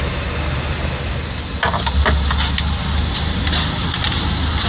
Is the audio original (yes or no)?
yes